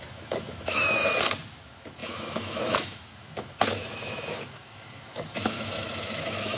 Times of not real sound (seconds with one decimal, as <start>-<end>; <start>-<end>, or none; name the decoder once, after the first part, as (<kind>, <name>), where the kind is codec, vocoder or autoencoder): 0.0-1.0 (autoencoder, DAC-VAE); 1.5-6.6